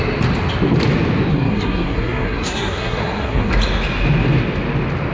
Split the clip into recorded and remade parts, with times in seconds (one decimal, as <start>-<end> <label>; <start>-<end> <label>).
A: 0.0-1.3 recorded; 1.3-3.5 remade; 3.5-5.1 recorded